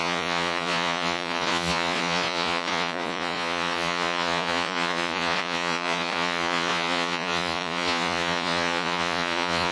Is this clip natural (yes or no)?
no